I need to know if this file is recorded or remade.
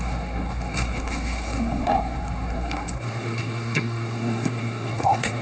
remade